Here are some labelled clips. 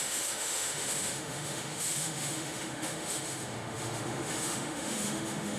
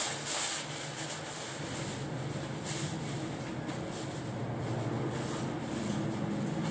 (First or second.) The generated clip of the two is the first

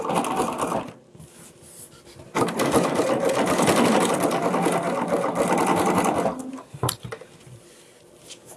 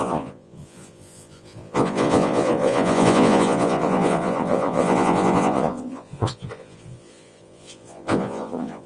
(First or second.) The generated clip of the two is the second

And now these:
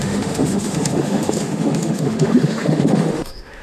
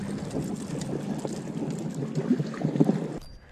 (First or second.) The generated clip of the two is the first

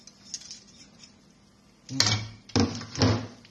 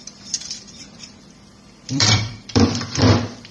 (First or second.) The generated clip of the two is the second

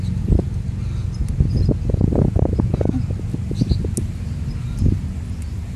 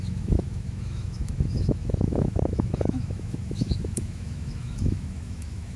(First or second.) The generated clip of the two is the second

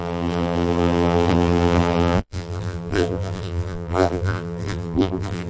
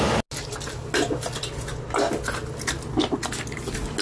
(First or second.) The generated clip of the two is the first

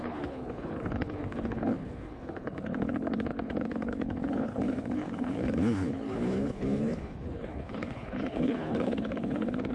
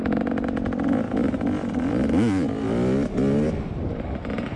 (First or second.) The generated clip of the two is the first